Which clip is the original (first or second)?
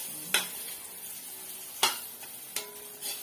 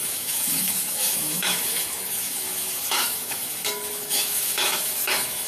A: first